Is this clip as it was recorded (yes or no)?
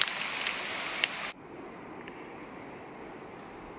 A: yes